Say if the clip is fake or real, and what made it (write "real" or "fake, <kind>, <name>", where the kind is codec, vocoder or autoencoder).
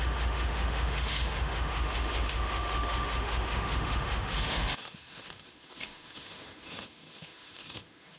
fake, autoencoder, DAC-VAE